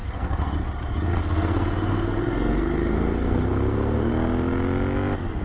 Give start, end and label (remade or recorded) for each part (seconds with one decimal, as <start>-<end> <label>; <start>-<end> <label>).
0.0-0.5 remade; 0.5-1.1 recorded; 1.1-4.1 remade; 4.1-5.4 recorded